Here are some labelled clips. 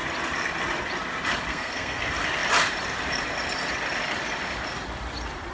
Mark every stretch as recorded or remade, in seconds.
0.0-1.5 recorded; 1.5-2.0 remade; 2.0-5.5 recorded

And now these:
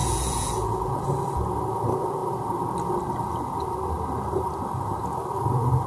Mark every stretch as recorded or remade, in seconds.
0.0-1.0 remade; 1.0-5.9 recorded

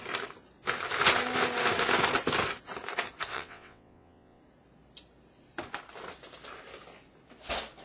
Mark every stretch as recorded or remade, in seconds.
0.0-3.3 recorded; 3.3-4.4 remade; 4.4-7.8 recorded

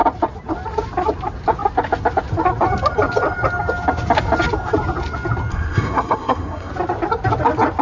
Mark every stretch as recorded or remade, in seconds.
0.0-5.5 recorded; 5.5-6.7 remade; 6.7-7.8 recorded

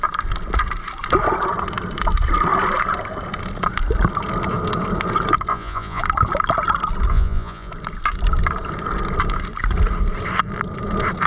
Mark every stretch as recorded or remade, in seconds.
0.0-5.5 recorded; 5.5-6.0 remade; 6.0-7.1 recorded; 7.1-7.7 remade; 7.7-11.3 recorded

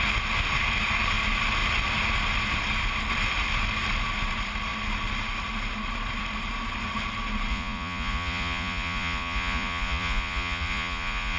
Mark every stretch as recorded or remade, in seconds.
0.0-7.5 recorded; 7.5-11.4 remade